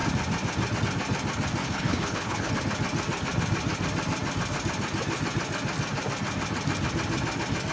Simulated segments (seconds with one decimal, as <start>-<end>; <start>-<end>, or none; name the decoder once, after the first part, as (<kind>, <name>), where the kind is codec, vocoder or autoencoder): 1.6-2.5 (codec, HILCodec)

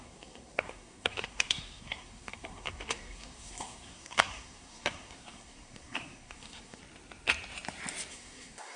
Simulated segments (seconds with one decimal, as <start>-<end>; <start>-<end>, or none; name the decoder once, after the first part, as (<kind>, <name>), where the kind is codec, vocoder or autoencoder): 0.0-6.8 (codec, SNAC); 8.1-8.8

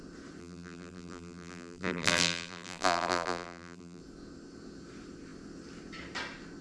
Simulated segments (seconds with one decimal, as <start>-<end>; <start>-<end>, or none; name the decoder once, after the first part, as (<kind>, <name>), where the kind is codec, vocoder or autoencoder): 0.4-4.0 (vocoder, BigVGAN v2)

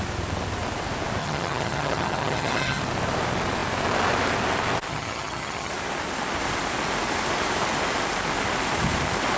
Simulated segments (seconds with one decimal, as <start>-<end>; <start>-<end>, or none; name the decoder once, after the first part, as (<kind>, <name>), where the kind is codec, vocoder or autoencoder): 1.2-2.8 (vocoder, HiFi-GAN); 4.9-5.7

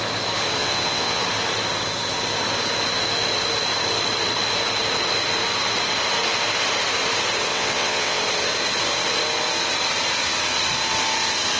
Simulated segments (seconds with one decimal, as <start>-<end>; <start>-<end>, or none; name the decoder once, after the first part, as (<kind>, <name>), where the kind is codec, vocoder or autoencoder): 0.6-1.2 (vocoder, WaveNeXt); 7.5-8.2

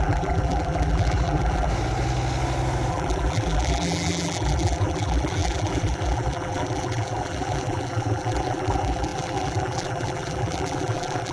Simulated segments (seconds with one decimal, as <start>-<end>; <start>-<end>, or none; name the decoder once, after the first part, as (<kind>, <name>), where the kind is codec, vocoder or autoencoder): 0.0-1.7 (vocoder, BigVGAN v2); 2.9-11.3

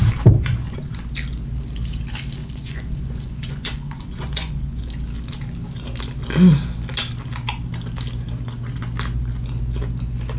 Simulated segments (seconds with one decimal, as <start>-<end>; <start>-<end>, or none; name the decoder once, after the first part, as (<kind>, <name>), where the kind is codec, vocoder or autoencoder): 0.4-1.0 (vocoder, Vocos); 2.4-4.8